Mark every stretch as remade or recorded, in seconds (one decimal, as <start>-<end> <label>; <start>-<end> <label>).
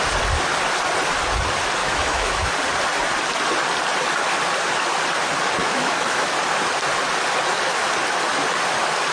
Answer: 0.0-1.8 recorded; 1.8-2.5 remade; 2.5-5.6 recorded; 5.6-6.3 remade; 6.3-9.1 recorded